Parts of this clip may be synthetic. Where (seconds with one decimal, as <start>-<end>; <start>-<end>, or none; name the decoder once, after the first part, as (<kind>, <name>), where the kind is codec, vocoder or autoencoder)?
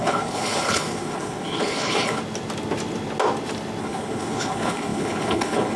0.0-2.2 (codec, HILCodec); 3.8-5.8